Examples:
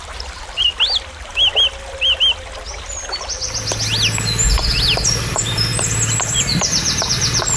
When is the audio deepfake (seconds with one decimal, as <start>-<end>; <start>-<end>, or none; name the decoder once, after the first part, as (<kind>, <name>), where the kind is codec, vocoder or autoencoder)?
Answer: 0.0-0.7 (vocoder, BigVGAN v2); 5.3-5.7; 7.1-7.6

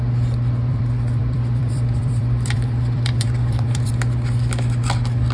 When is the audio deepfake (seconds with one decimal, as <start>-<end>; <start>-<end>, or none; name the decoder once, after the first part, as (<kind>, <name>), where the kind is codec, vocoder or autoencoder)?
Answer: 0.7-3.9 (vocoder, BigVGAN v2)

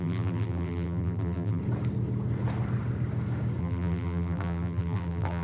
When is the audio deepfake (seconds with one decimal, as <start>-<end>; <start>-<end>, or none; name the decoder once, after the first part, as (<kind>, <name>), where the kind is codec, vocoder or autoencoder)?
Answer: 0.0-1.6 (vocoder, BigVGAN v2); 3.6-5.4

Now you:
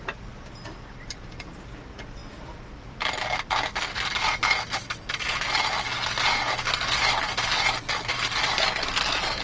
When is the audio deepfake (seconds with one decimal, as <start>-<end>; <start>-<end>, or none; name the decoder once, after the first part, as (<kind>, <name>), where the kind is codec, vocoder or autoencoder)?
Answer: none

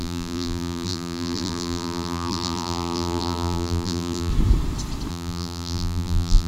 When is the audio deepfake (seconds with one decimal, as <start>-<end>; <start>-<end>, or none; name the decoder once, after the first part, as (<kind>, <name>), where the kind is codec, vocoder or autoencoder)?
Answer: 0.0-4.3 (vocoder, BigVGAN v2); 5.1-6.5

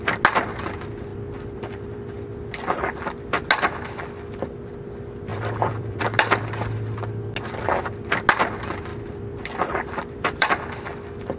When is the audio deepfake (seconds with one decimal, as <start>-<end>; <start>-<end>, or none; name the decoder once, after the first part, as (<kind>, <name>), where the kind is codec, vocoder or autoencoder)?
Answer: 1.1-2.2 (vocoder, BigVGAN v2); 5.3-6.0; 8.9-10.5